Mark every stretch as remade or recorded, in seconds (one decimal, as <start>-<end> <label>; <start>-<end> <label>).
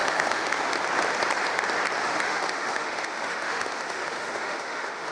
0.0-0.6 remade; 0.6-2.0 recorded; 2.0-5.1 remade